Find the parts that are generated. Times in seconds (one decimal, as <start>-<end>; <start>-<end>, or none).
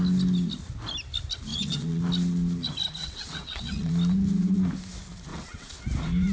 1.5-2.0; 3.0-3.9; 5.3-5.8